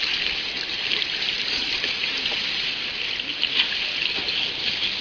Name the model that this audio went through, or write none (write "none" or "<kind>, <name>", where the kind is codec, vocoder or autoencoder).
none